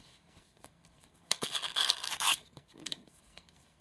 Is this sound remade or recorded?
remade